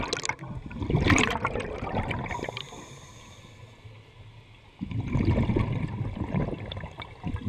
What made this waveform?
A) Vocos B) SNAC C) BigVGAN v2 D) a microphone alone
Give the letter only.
D